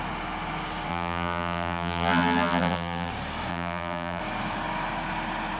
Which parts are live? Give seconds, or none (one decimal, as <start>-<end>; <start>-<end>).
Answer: 0.0-0.9; 3.1-3.5; 4.2-5.6